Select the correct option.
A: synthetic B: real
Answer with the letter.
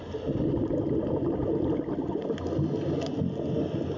B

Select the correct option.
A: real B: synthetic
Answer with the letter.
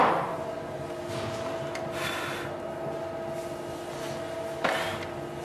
A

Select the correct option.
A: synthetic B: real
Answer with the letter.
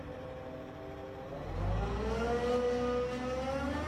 B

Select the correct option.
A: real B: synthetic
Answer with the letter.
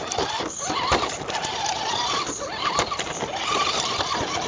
A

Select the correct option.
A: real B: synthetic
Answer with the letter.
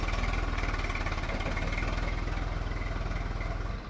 A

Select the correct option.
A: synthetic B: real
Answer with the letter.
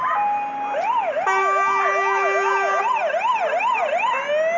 B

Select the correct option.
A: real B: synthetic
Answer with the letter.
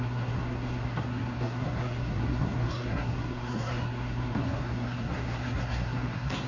B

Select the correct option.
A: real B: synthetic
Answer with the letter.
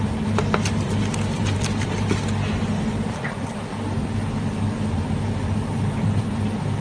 A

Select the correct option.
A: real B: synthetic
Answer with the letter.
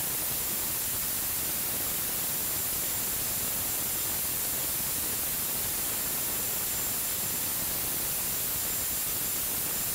A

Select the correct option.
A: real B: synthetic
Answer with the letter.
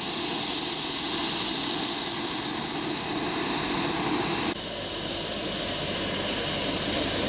A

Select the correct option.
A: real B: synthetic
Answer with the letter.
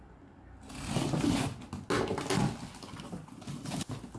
A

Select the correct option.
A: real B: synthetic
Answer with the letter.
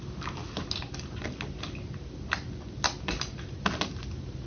A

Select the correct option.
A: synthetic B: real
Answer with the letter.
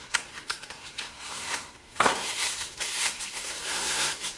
A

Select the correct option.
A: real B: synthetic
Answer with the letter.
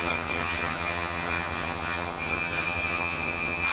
B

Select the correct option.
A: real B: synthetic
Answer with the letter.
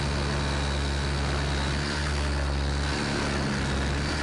A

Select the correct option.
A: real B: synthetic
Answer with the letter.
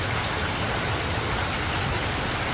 A